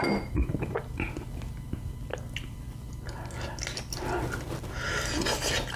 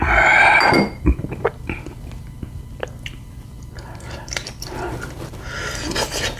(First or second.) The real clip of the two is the first